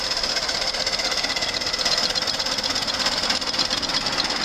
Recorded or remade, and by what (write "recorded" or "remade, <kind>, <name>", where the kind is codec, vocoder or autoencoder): recorded